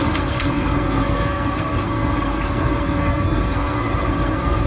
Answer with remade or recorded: remade